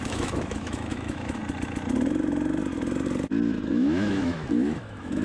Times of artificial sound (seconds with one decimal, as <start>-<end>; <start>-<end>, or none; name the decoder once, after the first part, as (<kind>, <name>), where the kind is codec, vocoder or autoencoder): 0.0-1.4 (autoencoder, DAC-VAE); 3.7-5.2